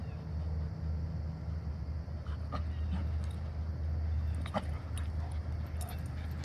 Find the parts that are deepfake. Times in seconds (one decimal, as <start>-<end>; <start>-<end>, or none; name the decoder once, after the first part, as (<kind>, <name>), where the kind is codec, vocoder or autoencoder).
none